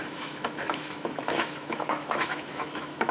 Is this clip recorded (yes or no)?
no